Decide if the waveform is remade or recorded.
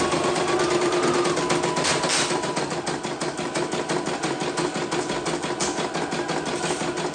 recorded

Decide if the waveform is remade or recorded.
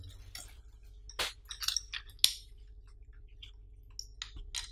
recorded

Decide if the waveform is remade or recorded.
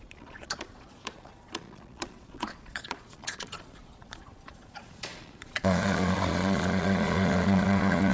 remade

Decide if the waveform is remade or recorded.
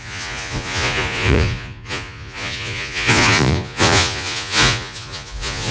remade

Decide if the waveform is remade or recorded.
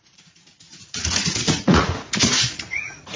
remade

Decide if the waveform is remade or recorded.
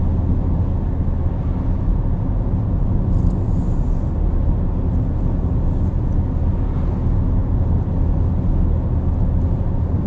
recorded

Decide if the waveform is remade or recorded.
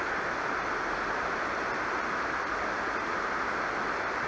recorded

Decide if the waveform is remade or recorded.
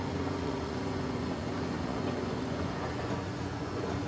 remade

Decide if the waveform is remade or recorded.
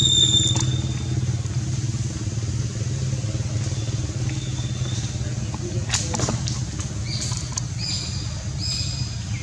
recorded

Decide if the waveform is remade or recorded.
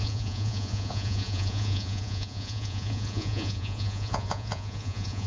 remade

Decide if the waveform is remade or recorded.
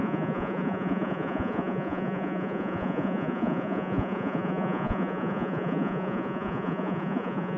remade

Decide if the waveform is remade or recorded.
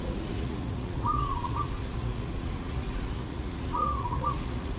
remade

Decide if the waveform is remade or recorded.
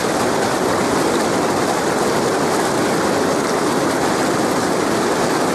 recorded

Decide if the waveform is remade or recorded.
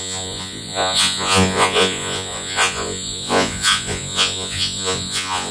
remade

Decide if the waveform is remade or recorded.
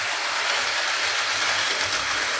recorded